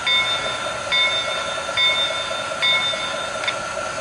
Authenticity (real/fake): real